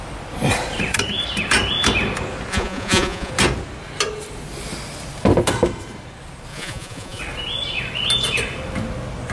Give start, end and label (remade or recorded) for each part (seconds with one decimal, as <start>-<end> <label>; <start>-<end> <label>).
0.0-2.5 recorded; 2.5-3.3 remade; 3.3-6.5 recorded; 6.5-7.2 remade; 7.2-9.3 recorded